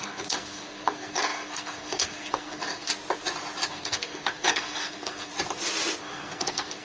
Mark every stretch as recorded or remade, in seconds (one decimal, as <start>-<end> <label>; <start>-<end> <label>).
0.0-2.9 remade; 2.9-3.7 recorded; 3.7-5.3 remade; 5.3-6.0 recorded; 6.0-6.8 remade